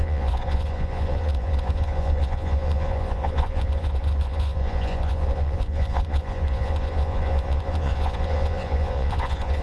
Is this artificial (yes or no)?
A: yes